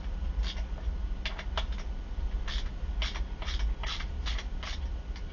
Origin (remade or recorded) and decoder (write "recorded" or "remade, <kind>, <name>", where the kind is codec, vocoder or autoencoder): recorded